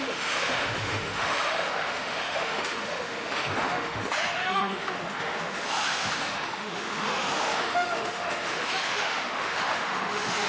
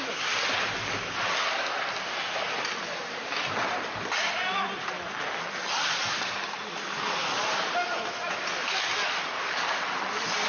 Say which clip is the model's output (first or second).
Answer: first